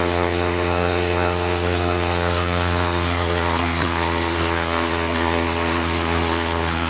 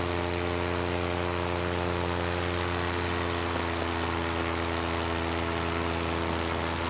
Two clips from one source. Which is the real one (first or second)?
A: second